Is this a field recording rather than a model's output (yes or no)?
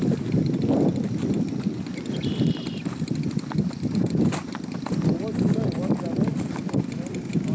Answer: yes